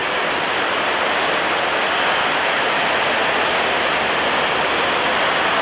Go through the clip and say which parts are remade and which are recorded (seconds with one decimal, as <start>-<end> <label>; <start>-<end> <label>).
0.0-2.8 remade; 2.8-5.6 recorded